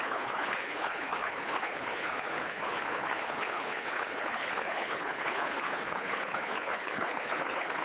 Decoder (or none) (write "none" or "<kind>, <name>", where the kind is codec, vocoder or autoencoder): codec, HILCodec